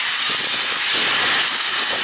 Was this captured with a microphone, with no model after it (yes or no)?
yes